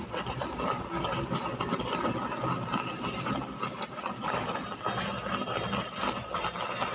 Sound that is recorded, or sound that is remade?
recorded